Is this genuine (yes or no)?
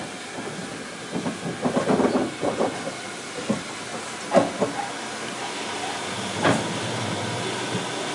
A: yes